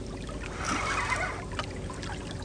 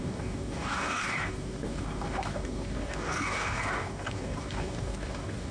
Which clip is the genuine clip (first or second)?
first